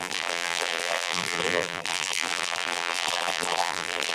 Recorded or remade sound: remade